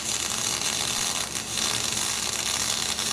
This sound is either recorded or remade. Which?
remade